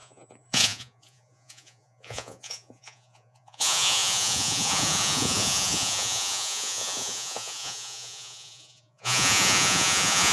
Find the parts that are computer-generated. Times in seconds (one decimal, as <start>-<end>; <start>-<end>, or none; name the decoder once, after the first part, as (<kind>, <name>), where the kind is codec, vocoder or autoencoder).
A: 0.0-10.3 (vocoder, Vocos)